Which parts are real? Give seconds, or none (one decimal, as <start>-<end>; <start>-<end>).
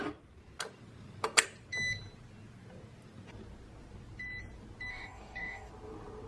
0.0-4.9; 5.7-6.3